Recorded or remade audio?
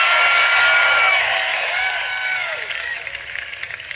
remade